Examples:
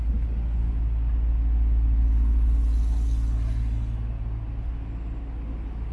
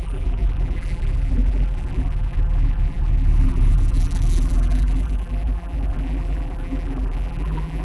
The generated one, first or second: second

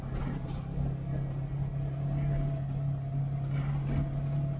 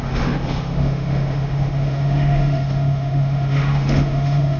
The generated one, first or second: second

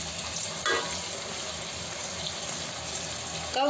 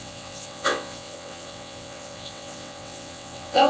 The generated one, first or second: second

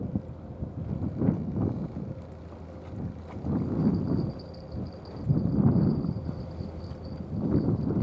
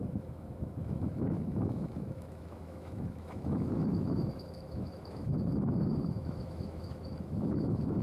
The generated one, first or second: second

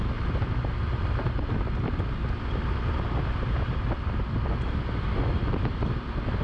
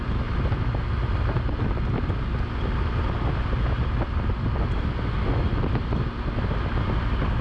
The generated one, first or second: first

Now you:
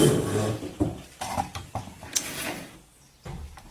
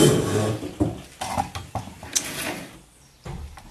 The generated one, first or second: first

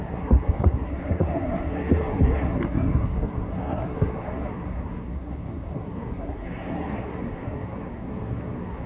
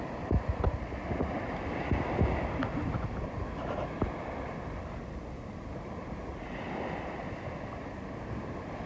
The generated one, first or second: first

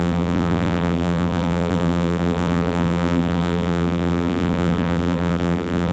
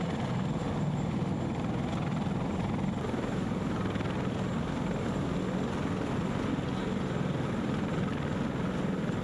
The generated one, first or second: first